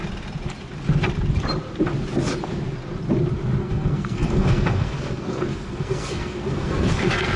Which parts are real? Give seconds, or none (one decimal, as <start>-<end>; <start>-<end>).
0.0-3.6